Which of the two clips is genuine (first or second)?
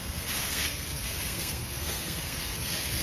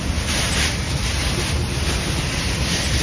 second